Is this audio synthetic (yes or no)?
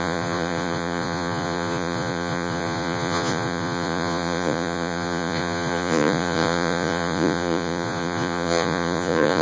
yes